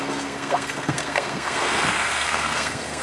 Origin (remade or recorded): remade